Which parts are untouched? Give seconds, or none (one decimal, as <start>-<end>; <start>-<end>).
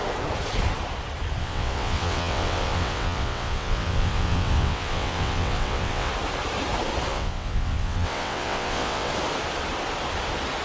0.0-1.4; 6.1-7.1; 9.1-10.6